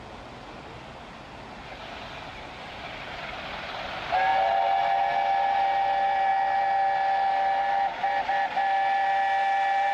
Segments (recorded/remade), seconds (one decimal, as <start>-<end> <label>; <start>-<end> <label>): 0.0-2.3 recorded; 2.3-2.9 remade; 2.9-9.9 recorded